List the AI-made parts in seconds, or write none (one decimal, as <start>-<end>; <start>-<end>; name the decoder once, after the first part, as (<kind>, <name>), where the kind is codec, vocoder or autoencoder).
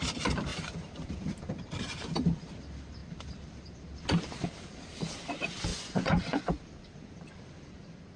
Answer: 5.7-6.4 (vocoder, Vocos)